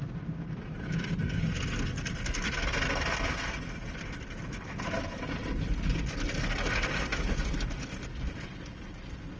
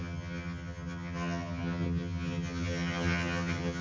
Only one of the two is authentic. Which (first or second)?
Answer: first